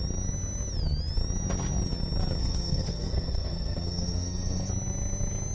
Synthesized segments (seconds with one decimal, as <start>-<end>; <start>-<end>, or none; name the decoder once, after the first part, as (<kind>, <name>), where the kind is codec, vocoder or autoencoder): 2.4-4.7 (codec, SNAC)